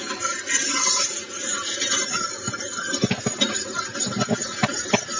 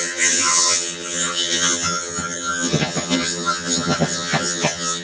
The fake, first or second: second